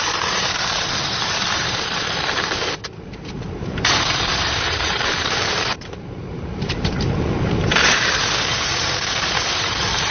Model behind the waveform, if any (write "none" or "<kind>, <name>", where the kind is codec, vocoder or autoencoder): vocoder, BigVGAN v2